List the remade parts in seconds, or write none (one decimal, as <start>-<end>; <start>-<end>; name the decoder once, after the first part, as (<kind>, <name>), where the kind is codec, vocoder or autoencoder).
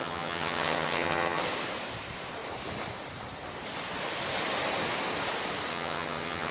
0.0-1.4 (vocoder, HiFi-GAN); 5.7-6.5